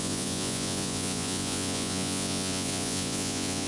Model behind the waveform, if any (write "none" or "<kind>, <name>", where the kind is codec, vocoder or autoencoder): vocoder, Vocos